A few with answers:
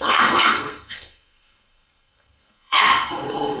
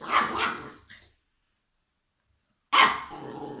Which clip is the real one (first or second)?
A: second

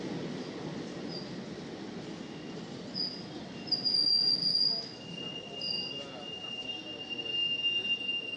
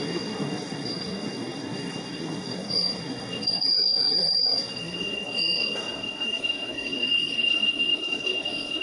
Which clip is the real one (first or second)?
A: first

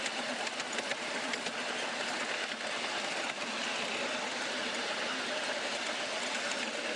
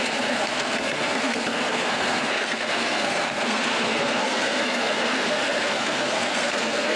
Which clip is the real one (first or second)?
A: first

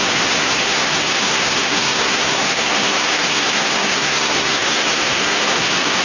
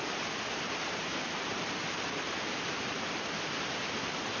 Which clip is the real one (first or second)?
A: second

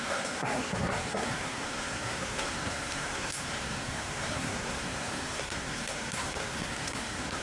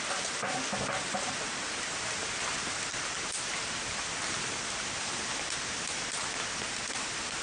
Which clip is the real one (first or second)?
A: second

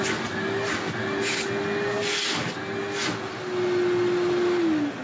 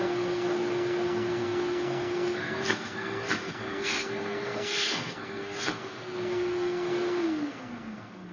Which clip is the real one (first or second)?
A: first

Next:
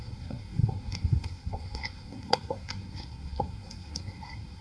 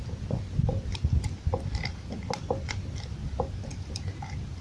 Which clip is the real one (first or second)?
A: second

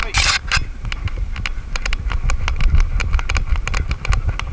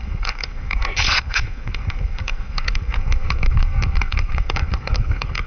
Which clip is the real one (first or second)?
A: first